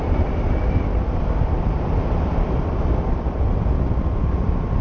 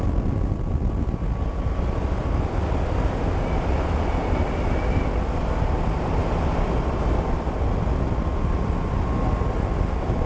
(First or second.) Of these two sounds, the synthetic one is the first